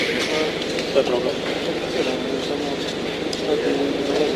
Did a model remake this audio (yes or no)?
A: no